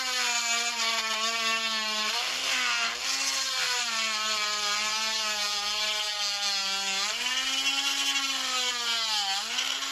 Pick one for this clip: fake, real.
real